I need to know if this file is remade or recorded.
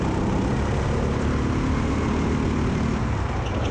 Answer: recorded